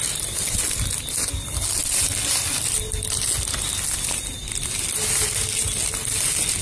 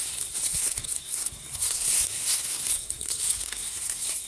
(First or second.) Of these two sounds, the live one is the first